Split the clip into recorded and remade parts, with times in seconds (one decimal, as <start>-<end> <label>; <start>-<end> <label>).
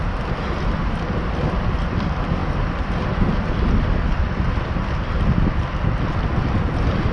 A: 0.0-7.1 recorded